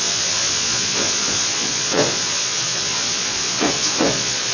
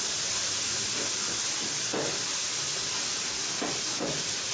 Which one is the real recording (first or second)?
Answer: second